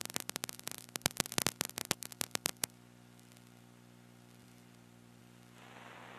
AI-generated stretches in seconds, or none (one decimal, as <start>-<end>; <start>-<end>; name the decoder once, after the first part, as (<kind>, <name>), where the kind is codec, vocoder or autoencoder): 4.4-5.2 (vocoder, BigVGAN v2)

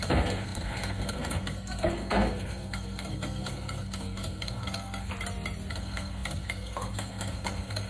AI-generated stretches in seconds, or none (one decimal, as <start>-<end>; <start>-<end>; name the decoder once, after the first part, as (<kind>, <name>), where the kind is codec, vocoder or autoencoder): 0.0-5.1 (codec, SNAC); 5.7-7.9